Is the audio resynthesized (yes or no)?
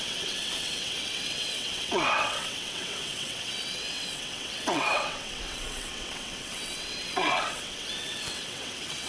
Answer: yes